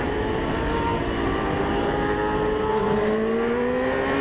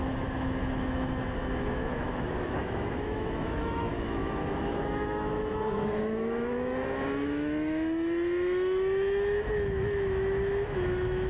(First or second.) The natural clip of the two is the first